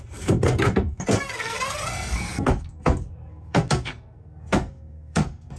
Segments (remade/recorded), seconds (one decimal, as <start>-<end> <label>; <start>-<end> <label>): 0.0-5.6 remade